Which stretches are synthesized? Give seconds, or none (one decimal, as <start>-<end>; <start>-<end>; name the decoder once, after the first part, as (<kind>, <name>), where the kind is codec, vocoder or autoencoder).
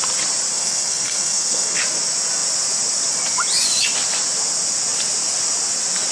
0.5-1.8 (codec, SNAC)